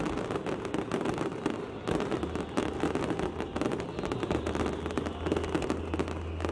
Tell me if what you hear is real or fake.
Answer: real